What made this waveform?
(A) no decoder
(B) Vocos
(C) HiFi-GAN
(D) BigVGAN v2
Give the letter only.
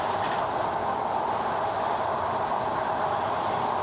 A